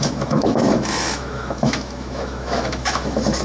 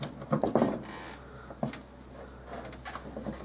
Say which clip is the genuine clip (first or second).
second